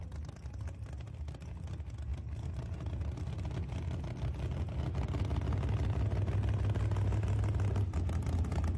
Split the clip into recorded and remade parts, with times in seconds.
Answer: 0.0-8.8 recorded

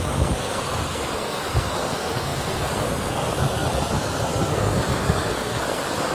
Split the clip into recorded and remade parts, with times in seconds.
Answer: 0.0-6.1 remade